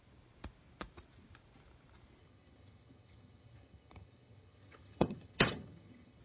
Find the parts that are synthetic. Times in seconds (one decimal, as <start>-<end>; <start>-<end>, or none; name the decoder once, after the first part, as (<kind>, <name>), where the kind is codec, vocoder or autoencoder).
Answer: 2.2-6.2 (vocoder, HiFi-GAN)